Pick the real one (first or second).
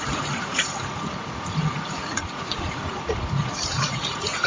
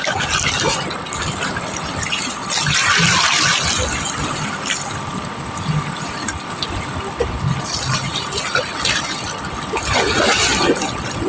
second